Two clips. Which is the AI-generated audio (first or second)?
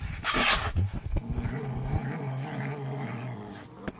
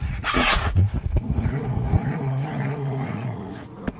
second